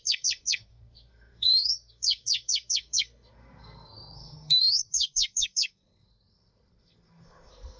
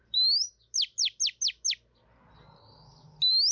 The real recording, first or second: second